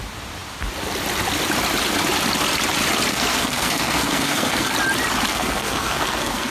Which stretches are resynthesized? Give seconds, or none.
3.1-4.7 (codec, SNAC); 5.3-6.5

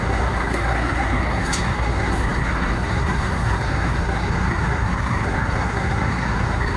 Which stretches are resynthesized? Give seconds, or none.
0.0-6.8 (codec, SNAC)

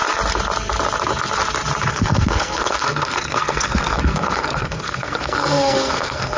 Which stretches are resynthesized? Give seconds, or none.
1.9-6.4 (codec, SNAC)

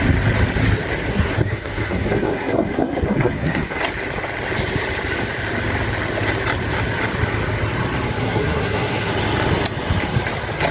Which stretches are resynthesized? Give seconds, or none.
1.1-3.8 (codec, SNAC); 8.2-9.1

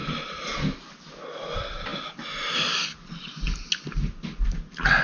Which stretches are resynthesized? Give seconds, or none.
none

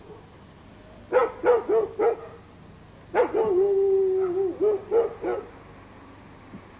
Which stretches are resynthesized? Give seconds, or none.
none

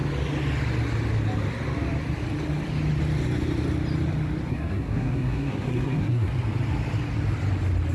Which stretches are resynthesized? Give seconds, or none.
4.5-6.3 (codec, SNAC)